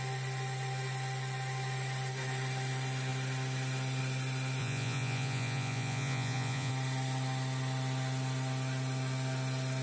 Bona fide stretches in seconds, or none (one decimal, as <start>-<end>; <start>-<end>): 0.0-4.6; 6.7-9.8

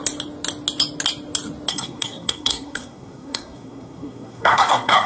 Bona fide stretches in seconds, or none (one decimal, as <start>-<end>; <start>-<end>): 0.0-1.7

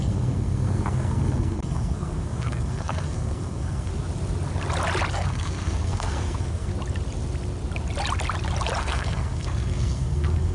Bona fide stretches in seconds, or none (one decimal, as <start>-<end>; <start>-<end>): 3.9-5.1; 6.7-8.8